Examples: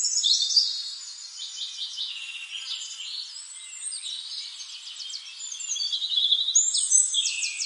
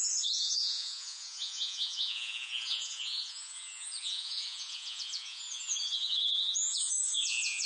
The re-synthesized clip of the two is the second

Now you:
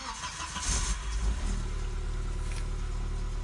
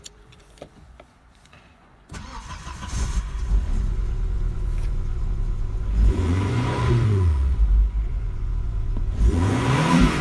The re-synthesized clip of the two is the second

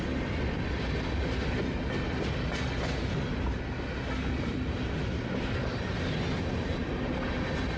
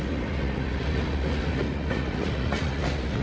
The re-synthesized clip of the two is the second